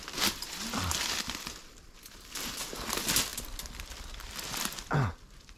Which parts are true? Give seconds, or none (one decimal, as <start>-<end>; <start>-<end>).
0.0-5.6